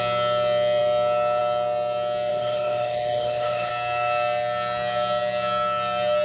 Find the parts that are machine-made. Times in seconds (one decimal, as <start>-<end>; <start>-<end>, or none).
2.3-3.7

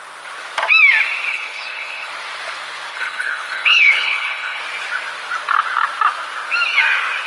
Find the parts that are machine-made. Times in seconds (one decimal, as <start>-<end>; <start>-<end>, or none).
1.3-2.1; 2.9-4.6

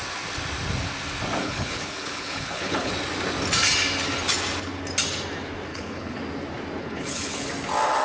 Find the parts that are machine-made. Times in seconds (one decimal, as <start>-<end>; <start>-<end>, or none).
1.4-2.9; 5.7-6.2; 6.8-7.5

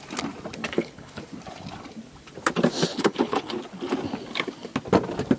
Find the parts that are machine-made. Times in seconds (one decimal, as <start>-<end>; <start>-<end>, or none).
0.6-1.2; 2.9-3.6

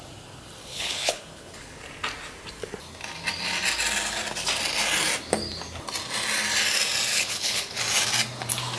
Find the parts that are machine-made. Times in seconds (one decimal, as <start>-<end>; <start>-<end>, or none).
0.6-1.8; 7.1-7.8

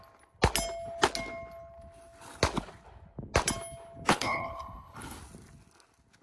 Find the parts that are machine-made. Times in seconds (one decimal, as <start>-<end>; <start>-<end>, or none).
4.1-5.2